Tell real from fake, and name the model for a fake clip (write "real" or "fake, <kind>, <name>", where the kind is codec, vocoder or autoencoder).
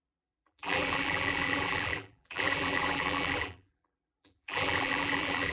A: fake, vocoder, BigVGAN v2